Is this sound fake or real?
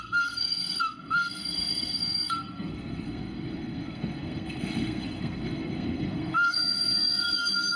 fake